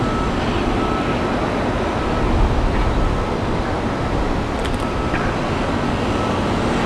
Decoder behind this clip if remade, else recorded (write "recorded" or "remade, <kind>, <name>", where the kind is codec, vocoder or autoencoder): recorded